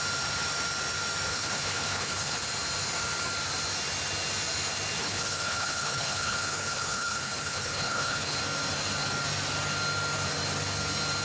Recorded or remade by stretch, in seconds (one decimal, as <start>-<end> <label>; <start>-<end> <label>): 0.0-1.3 recorded; 1.3-2.4 remade; 2.4-5.0 recorded; 5.0-8.4 remade; 8.4-11.2 recorded